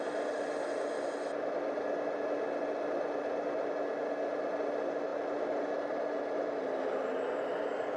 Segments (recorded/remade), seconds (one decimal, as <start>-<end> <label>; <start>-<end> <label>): 0.0-8.0 recorded